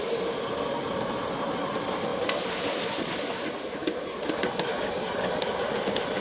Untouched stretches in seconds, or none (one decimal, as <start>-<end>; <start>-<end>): 0.0-6.2